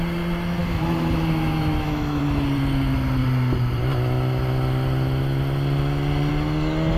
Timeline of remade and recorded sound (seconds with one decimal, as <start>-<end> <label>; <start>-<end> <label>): 0.0-0.6 recorded; 0.6-2.2 remade; 2.2-7.0 recorded

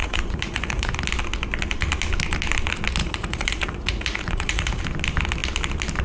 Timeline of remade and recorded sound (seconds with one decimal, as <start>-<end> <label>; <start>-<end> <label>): 0.0-0.9 remade; 0.9-3.0 recorded; 3.0-4.8 remade; 4.8-6.0 recorded

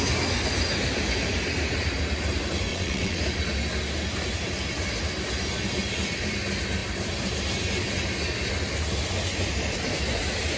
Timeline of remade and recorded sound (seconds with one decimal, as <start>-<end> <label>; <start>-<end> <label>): 0.0-2.7 recorded; 2.7-3.2 remade; 3.2-10.6 recorded

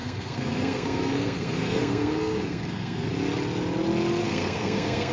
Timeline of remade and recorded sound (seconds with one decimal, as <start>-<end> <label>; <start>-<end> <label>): 0.0-3.1 remade; 3.1-4.2 recorded; 4.2-5.1 remade